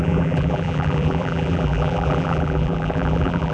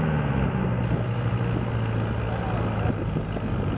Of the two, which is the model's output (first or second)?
first